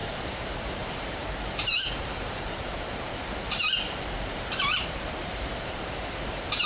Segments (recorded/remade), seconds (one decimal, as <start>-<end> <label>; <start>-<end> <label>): 0.0-6.7 remade